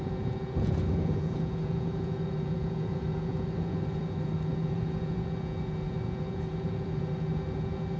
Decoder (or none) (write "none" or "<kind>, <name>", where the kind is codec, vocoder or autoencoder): vocoder, Vocos